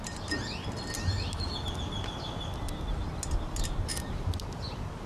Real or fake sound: real